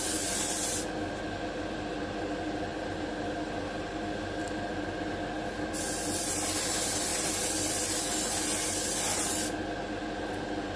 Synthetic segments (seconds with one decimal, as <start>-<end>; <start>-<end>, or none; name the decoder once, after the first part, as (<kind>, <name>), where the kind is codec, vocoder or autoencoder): none